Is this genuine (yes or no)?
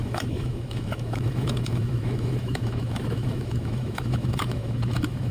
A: no